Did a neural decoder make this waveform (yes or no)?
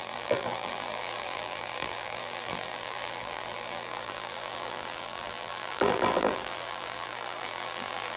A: yes